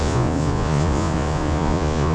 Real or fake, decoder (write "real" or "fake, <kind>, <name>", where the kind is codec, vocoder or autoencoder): fake, vocoder, Vocos